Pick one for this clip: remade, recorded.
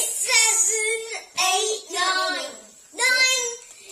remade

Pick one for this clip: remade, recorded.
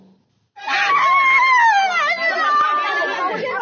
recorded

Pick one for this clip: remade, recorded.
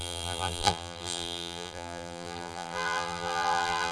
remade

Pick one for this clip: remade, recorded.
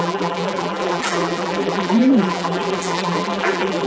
remade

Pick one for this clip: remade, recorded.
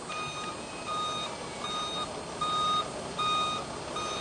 recorded